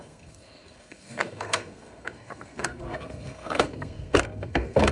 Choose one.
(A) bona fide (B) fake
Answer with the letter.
B